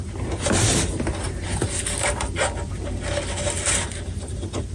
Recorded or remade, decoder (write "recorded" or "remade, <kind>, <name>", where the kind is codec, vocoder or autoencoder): recorded